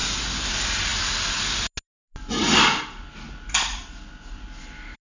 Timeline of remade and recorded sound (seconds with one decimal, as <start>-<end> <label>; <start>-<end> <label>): 0.0-5.2 recorded